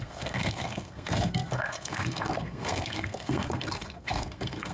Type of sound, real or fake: fake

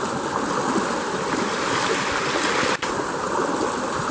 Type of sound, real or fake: real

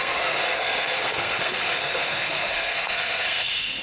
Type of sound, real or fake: fake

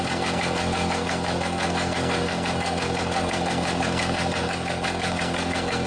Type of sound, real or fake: fake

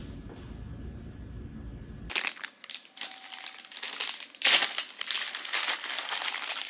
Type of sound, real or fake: real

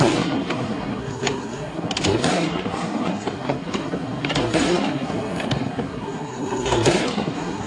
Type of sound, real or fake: fake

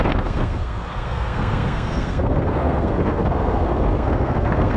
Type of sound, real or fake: fake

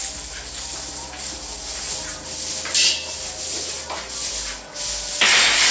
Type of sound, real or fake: real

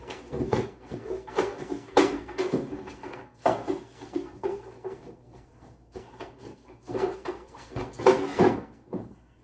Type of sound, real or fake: fake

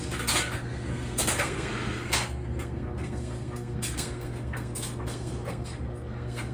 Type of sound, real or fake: fake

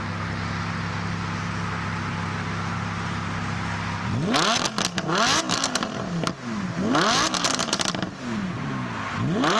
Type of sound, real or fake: real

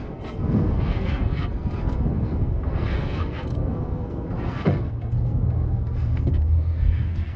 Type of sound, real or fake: fake